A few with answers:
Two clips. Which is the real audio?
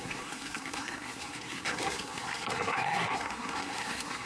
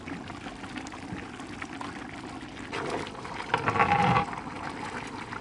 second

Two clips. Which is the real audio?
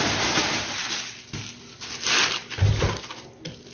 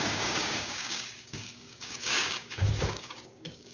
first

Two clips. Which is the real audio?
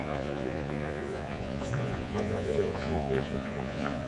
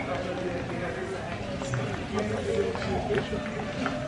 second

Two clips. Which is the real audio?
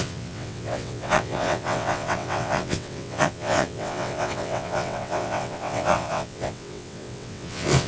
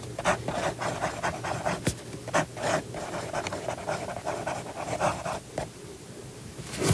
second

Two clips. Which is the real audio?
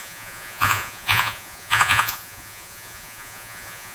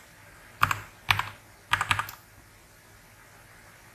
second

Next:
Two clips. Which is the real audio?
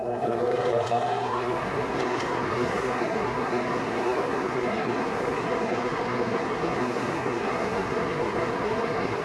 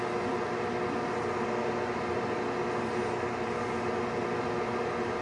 second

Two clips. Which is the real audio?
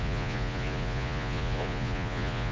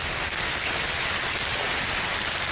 second